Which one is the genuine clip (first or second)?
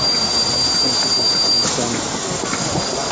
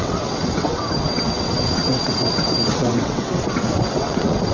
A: first